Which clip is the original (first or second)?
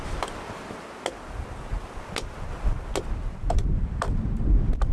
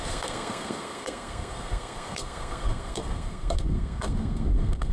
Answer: first